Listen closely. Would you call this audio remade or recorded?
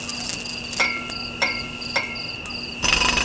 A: recorded